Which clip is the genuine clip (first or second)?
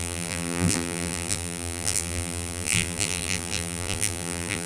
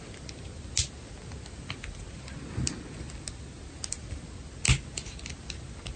second